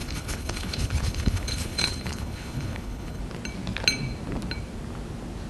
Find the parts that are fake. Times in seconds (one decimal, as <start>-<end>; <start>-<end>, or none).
0.0-3.2